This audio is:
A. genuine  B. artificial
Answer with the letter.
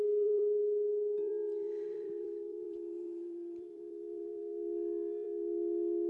B